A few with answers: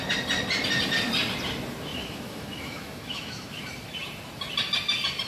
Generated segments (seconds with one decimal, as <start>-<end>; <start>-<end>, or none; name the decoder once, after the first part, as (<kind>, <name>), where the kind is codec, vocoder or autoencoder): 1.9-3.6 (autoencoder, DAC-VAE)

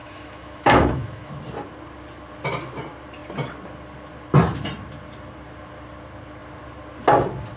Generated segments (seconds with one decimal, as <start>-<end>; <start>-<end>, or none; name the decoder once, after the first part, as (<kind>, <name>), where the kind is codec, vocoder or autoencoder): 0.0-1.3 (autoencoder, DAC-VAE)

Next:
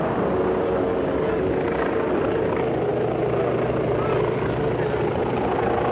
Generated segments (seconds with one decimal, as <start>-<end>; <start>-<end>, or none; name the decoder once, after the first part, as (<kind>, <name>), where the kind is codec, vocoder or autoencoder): none